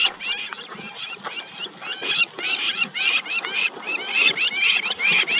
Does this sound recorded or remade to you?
recorded